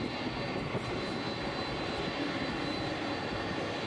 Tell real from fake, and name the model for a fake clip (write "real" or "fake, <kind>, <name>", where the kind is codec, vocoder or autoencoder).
real